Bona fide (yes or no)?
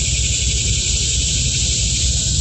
yes